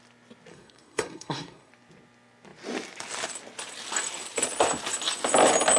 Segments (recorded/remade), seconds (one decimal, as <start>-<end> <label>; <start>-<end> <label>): 0.0-0.5 recorded; 0.5-1.7 remade; 1.7-5.8 recorded